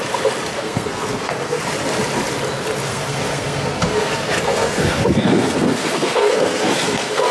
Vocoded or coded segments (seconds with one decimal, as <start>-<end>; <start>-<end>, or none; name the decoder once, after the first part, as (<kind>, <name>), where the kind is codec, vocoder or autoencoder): 0.6-1.6 (codec, SNAC); 2.9-7.3